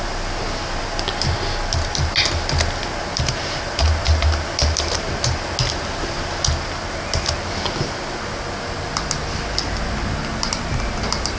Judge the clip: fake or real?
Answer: real